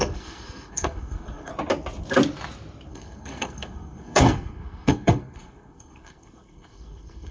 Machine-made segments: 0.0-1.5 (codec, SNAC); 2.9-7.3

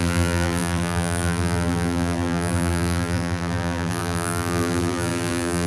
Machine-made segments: 0.0-5.7 (vocoder, BigVGAN v2)

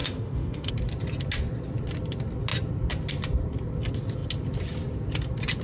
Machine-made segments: 0.0-0.7 (autoencoder, DAC-VAE)

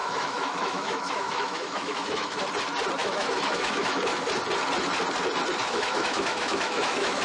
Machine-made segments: 0.0-2.4 (autoencoder, DAC-VAE); 3.0-4.0; 5.6-7.2

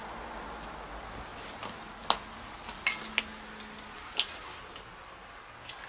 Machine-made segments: none